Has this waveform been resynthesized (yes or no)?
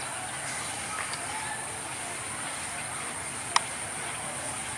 no